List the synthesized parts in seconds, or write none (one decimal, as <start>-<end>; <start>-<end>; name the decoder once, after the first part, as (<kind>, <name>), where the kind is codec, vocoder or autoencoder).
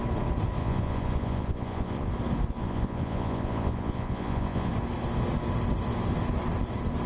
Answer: 0.6-2.1 (vocoder, Vocos); 2.6-4.7